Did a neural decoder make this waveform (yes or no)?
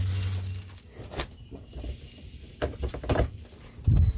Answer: no